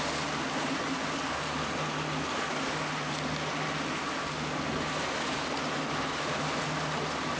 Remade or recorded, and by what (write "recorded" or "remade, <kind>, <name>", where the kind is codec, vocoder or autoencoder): recorded